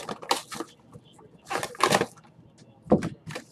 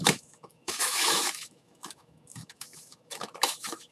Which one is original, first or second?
first